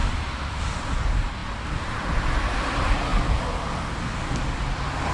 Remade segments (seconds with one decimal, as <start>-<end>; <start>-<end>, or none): 0.0-0.6

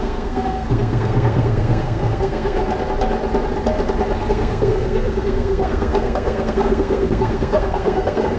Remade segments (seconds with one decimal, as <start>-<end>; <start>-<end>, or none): 0.0-2.6; 4.3-8.4

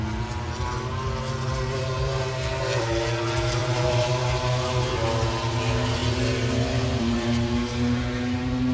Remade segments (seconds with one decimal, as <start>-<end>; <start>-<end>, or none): 3.6-4.1

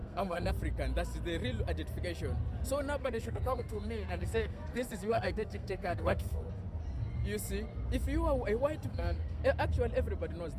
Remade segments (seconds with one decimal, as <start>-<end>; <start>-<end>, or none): 0.0-0.5; 3.0-6.5; 8.9-9.4